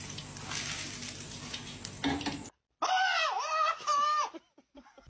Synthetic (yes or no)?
no